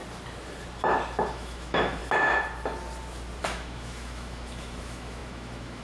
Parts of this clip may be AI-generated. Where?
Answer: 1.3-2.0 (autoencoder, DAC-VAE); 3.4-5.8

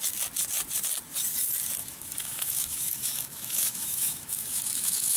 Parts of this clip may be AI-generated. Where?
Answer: 1.8-5.2 (autoencoder, DAC-VAE)

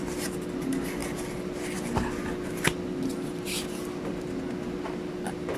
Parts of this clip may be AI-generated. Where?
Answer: none

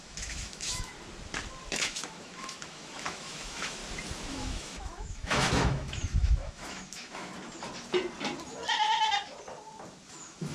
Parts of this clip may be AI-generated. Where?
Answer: 0.0-0.9 (autoencoder, DAC-VAE); 1.7-3.8; 4.3-7.3; 10.1-10.5

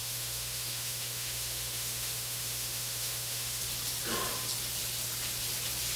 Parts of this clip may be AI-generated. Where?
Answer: 0.0-3.6 (autoencoder, DAC-VAE)